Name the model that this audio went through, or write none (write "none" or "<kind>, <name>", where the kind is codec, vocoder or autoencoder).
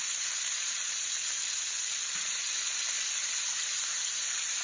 vocoder, BigVGAN v2